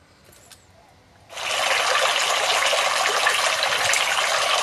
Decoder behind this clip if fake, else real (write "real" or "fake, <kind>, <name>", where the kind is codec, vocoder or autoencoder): real